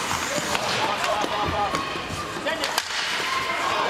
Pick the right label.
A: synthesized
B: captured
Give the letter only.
A